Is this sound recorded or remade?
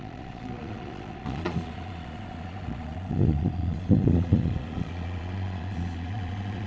remade